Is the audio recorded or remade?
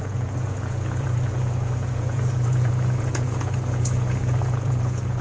remade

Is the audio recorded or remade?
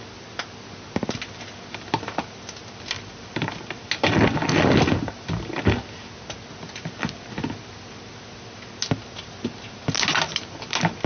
recorded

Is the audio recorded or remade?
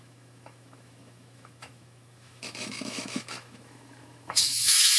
remade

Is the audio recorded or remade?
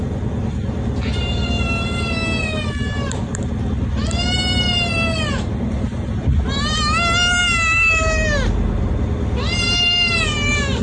recorded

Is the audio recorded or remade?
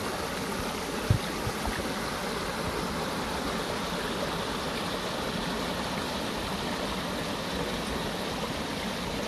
recorded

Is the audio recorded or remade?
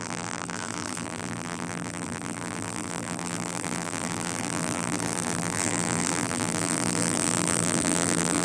remade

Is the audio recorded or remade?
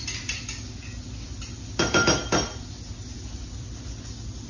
recorded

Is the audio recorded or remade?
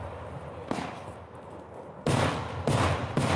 recorded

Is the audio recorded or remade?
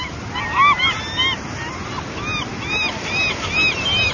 recorded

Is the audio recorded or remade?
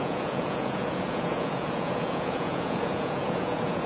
remade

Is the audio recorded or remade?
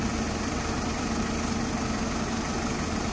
recorded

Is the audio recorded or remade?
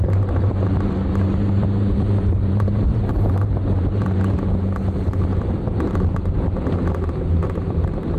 remade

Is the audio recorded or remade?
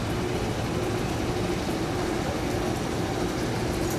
recorded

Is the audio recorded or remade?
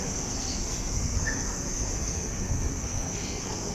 remade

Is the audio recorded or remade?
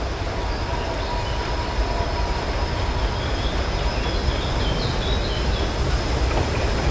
recorded